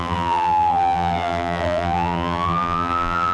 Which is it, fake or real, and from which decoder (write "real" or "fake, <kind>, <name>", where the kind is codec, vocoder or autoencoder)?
fake, vocoder, BigVGAN v2